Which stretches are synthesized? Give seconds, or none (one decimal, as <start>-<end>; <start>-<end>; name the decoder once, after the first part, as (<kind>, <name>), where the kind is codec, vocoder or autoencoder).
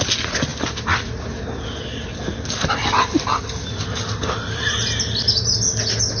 none